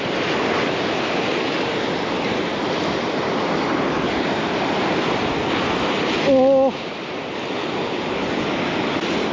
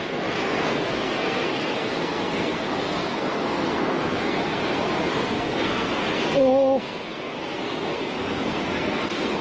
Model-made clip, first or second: second